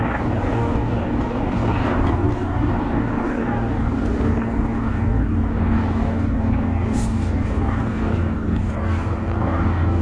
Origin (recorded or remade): remade